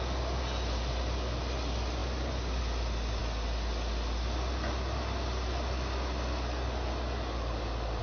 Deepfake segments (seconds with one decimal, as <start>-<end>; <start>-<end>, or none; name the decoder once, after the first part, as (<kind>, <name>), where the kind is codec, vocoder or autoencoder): none